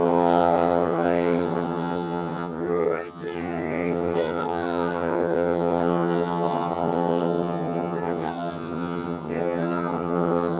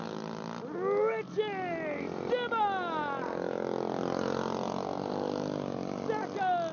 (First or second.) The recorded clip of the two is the second